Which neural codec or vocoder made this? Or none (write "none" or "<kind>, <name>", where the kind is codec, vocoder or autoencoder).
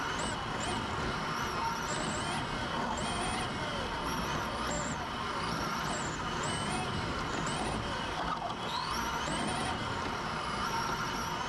none